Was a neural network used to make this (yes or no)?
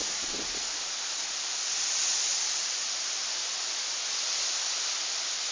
no